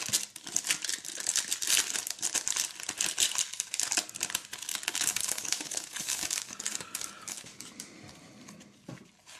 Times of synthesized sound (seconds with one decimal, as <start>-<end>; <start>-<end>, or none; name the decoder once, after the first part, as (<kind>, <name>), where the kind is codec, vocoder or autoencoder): 4.7-7.7 (codec, DAC)